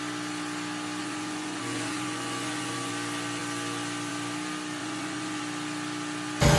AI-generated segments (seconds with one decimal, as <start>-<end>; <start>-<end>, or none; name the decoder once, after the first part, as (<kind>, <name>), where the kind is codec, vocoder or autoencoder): 1.0-2.9 (vocoder, Vocos); 4.8-5.4